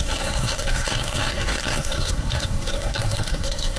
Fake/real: fake